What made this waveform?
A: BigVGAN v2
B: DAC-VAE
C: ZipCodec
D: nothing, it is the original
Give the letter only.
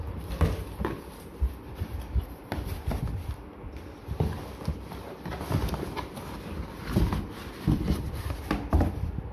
A